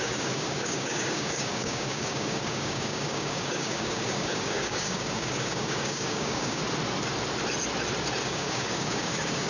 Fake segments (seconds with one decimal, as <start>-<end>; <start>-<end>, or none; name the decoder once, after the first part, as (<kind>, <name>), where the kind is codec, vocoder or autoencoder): 0.0-6.6 (codec, DAC); 8.2-9.5